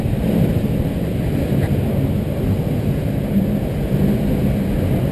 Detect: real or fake real